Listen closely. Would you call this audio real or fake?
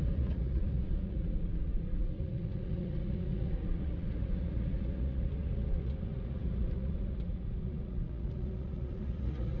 fake